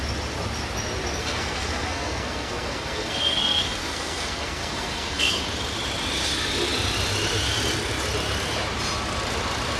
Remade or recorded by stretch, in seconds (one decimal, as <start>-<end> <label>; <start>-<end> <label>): 0.0-1.2 recorded; 1.2-5.4 remade; 5.4-9.8 recorded